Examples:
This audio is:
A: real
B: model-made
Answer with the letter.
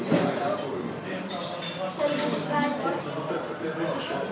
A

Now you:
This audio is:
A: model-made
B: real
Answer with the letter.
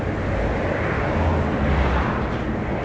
B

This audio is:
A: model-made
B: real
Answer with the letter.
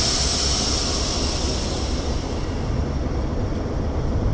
B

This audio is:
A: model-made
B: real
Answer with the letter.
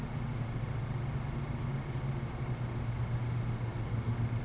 B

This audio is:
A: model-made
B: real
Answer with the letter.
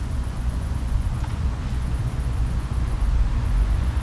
A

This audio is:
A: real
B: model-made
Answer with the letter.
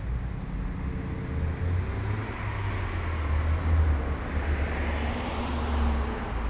A